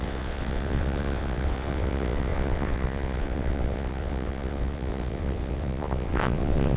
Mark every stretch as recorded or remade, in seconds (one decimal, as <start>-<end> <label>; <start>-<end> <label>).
0.0-6.8 remade